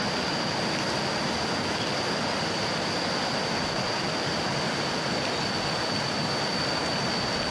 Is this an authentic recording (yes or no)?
yes